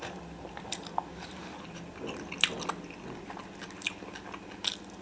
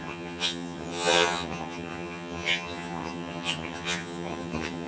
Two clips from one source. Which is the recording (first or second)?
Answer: first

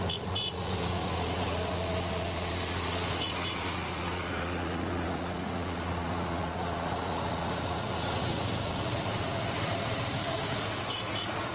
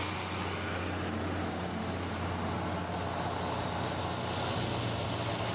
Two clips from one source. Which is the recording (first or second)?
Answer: second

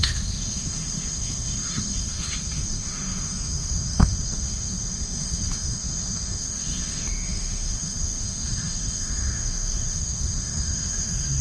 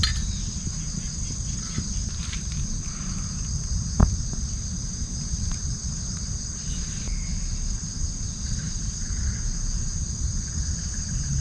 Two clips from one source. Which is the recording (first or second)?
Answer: second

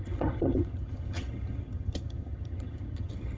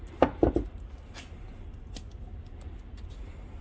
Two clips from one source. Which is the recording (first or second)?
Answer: second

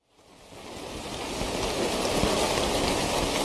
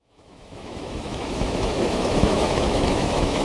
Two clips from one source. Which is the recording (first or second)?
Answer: first